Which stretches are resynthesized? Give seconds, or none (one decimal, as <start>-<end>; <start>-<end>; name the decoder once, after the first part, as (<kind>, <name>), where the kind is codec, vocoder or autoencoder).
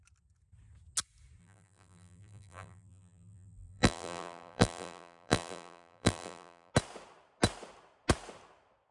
1.4-6.7 (vocoder, BigVGAN v2)